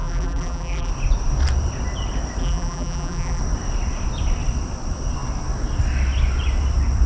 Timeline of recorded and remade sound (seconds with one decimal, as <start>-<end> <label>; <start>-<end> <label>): 0.0-0.9 remade; 0.9-2.4 recorded; 2.4-3.4 remade; 3.4-7.1 recorded